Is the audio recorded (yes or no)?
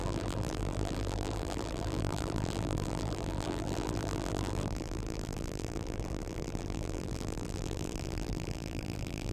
no